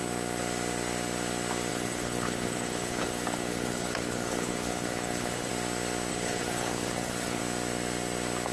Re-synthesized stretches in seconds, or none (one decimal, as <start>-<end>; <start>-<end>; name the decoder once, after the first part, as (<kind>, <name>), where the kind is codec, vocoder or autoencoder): 1.7-5.5 (codec, HILCodec); 6.1-7.4